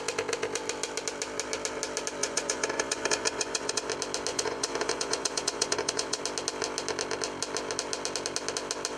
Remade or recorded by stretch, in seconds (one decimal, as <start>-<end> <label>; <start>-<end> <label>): 0.0-2.2 recorded; 2.2-3.9 remade; 3.9-4.3 recorded; 4.3-6.2 remade; 6.2-9.0 recorded